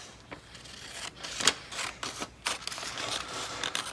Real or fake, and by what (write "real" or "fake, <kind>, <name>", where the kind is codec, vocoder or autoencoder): real